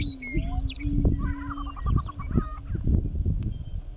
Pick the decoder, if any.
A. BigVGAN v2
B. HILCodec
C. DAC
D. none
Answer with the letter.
D